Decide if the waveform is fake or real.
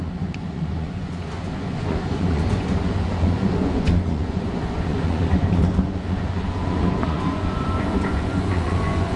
fake